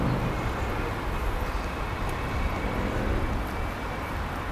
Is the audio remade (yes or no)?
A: no